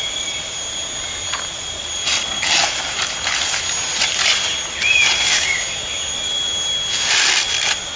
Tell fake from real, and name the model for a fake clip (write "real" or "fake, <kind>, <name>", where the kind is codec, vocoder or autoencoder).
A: real